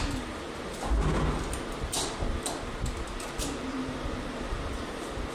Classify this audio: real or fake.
real